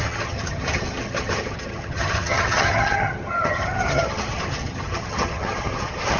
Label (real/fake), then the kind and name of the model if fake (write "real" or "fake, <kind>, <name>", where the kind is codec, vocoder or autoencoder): fake, vocoder, HiFi-GAN